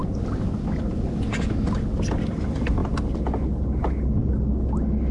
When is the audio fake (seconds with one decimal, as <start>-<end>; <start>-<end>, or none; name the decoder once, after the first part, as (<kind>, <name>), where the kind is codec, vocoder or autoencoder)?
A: none